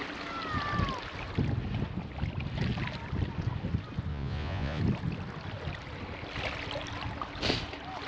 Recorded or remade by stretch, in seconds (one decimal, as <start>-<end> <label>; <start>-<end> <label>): 0.0-4.1 recorded; 4.1-4.8 remade; 4.8-8.1 recorded